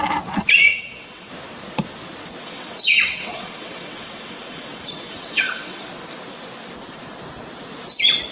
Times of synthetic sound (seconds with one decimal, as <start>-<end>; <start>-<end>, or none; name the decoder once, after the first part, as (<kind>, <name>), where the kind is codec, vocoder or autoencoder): 0.7-1.3 (vocoder, WaveNeXt); 2.4-5.9